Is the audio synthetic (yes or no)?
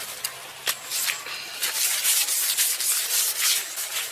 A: no